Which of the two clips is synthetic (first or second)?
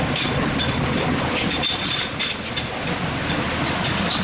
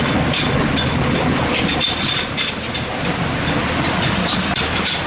first